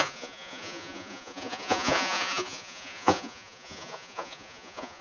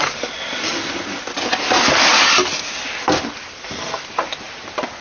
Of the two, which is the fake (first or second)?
first